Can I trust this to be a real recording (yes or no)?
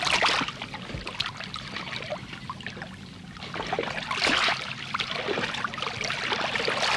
yes